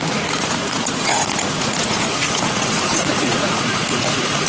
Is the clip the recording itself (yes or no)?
no